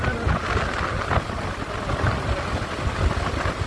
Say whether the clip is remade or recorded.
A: recorded